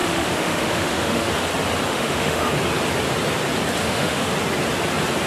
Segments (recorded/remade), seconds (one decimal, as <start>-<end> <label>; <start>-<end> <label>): 0.0-1.3 remade; 1.3-1.9 recorded; 1.9-2.5 remade; 2.5-3.8 recorded; 3.8-4.3 remade; 4.3-5.3 recorded